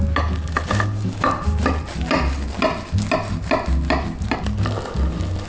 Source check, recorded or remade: recorded